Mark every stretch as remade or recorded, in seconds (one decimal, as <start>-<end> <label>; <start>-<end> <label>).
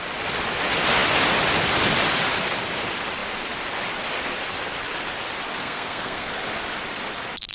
0.0-5.6 recorded; 5.6-6.3 remade; 6.3-7.5 recorded